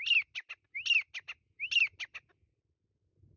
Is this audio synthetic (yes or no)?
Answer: no